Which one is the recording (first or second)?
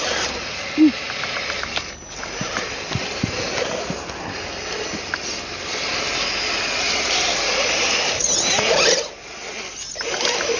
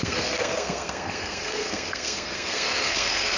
first